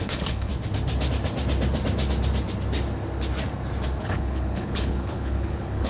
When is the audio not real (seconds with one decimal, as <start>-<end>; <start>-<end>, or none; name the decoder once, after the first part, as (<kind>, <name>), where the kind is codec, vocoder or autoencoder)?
0.0-0.5 (codec, HILCodec); 4.0-5.9